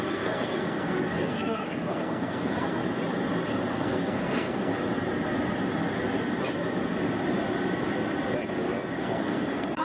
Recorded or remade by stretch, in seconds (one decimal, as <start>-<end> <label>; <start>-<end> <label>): 0.0-2.8 remade; 2.8-3.7 recorded; 3.7-4.7 remade; 4.7-9.0 recorded; 9.0-9.8 remade